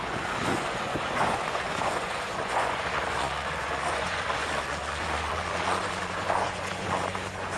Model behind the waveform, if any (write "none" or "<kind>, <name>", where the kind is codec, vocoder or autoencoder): vocoder, Vocos